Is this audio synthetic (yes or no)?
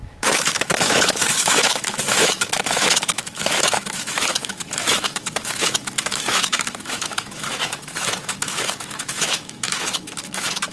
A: yes